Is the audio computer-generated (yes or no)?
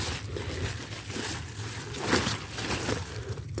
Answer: no